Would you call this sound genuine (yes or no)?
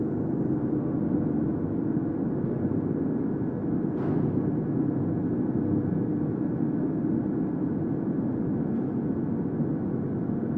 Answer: yes